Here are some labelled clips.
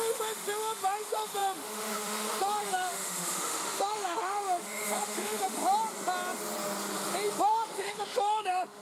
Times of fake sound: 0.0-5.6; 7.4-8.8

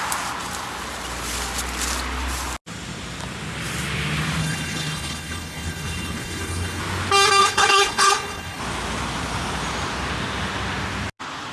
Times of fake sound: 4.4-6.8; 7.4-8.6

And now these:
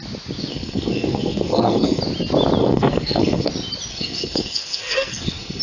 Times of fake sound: 0.5-2.0; 2.6-3.5; 3.9-5.6

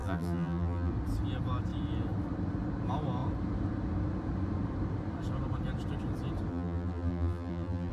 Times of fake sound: 0.0-0.9; 6.5-7.9

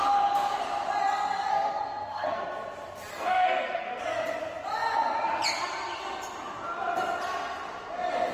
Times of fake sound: 1.5-2.4; 3.1-4.0

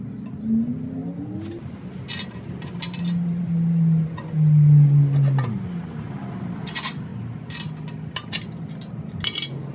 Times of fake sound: none

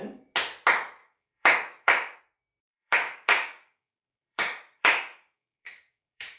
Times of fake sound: 1.0-2.2; 2.6-6.4